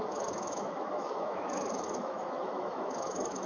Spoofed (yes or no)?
yes